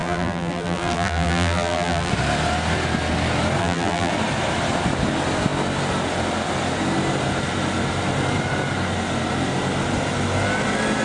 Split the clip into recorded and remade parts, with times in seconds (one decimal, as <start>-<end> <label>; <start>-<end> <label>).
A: 0.0-2.1 remade; 2.1-3.6 recorded; 3.6-4.1 remade; 4.1-11.0 recorded